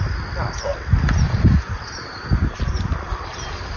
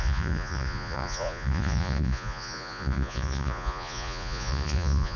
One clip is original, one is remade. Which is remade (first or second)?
second